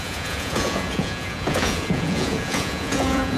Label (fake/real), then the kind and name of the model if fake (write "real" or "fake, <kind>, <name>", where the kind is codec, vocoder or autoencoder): fake, vocoder, Vocos